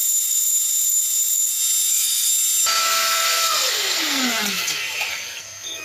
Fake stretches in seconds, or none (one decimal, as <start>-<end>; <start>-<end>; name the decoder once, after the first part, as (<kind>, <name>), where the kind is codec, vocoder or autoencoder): 1.9-2.3 (codec, SNAC); 2.8-5.8